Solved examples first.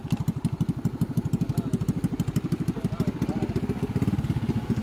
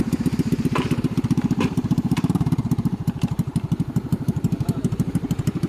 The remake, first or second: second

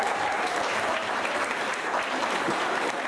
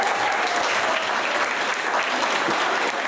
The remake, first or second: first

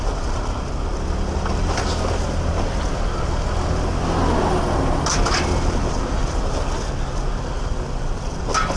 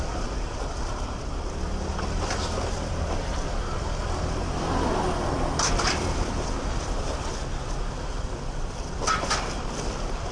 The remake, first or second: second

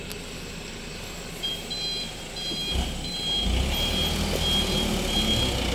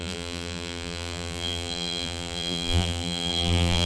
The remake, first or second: second